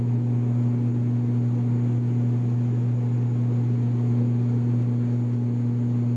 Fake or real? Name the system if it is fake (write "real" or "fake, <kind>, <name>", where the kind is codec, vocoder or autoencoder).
real